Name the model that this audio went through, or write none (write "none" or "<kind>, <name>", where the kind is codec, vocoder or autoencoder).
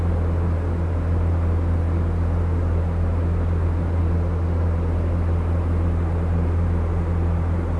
none